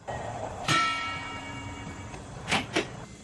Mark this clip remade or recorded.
remade